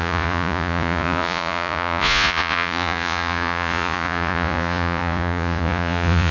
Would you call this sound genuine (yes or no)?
no